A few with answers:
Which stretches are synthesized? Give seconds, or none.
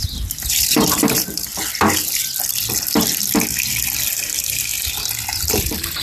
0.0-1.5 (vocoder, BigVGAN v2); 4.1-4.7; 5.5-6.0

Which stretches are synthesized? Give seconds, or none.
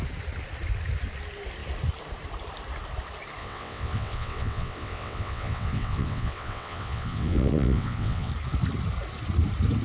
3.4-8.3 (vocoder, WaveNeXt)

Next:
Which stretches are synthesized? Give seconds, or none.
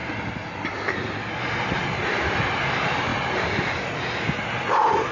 none